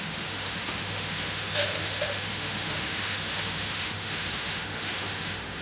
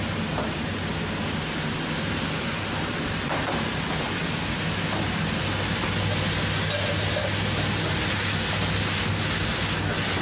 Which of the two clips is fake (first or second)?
first